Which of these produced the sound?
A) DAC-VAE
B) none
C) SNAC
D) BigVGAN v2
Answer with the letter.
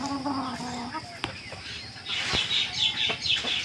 B